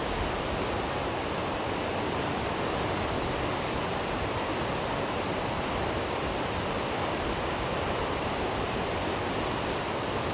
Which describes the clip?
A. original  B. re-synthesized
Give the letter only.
A